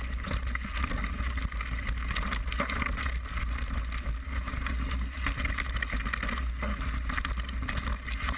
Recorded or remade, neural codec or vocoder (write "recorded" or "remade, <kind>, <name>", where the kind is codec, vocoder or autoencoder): recorded